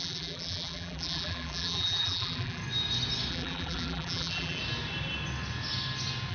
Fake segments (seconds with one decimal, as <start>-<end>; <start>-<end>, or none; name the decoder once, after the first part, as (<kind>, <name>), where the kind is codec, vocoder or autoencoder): 0.0-2.6 (vocoder, BigVGAN v2); 3.3-4.6